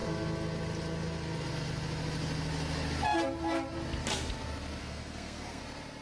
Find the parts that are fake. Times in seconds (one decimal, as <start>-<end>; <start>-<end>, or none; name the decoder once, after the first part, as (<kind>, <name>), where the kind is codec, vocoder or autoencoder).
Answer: 4.8-5.6 (codec, SNAC)